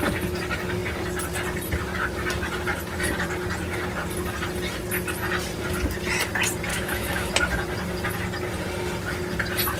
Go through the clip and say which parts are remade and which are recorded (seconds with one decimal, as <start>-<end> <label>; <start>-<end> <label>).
0.0-6.7 recorded; 6.7-7.3 remade; 7.3-9.8 recorded